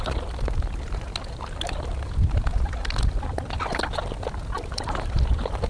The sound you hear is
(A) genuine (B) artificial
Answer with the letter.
A